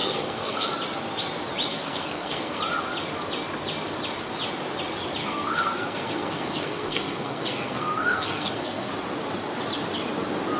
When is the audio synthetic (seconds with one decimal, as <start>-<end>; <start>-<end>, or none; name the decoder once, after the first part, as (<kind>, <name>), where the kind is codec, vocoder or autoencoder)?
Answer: 0.0-0.7 (codec, SNAC); 1.7-2.6; 5.2-8.9